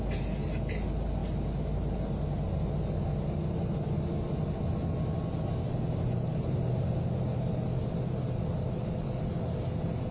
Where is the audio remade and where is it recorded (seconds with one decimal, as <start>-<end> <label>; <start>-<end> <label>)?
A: 0.0-6.3 recorded; 6.3-7.0 remade; 7.0-10.1 recorded